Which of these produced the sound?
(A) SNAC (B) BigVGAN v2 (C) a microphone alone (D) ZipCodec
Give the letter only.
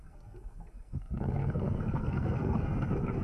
A